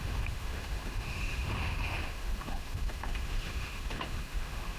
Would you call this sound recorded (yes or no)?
no